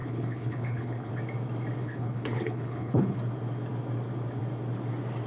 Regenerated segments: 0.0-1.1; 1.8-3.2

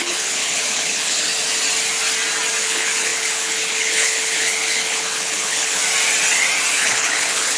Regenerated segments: 0.0-1.3; 2.6-5.8; 6.7-7.6

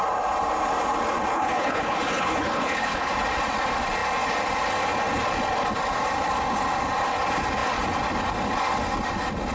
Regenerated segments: 1.3-3.1

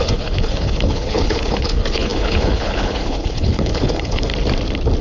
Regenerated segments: 0.0-4.3

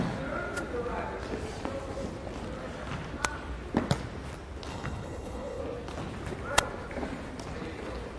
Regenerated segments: 4.7-5.6

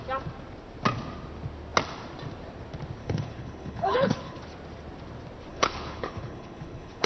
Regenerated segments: 3.0-4.4; 5.5-7.1

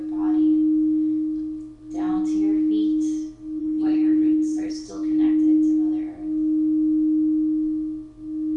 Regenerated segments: 3.6-4.9